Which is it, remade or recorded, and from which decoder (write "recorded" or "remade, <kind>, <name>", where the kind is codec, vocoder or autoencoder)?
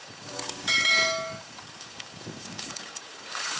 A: remade, codec, DAC